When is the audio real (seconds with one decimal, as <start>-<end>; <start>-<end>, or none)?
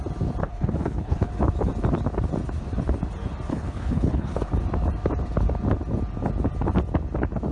0.0-0.4; 1.3-3.5; 4.5-7.5